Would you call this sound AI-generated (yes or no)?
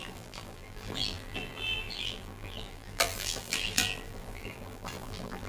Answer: yes